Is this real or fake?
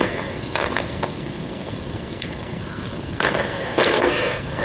fake